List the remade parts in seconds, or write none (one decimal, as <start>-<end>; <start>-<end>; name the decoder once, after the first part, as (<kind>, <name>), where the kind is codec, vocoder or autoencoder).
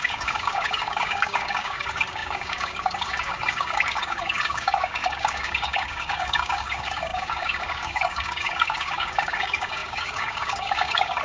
0.0-11.2 (codec, DAC)